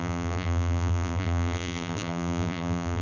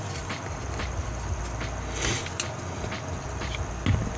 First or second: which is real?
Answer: second